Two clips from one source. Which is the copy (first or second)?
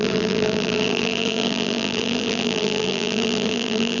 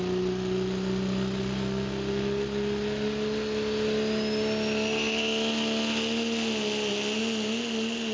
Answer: first